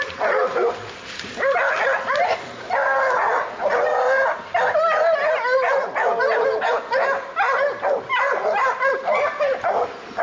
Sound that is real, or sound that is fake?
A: real